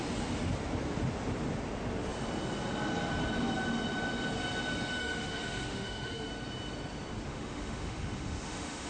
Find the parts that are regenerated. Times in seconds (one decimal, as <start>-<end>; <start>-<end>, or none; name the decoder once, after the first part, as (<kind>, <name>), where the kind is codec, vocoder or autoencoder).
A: 5.0-6.3 (autoencoder, DAC-VAE); 7.3-8.9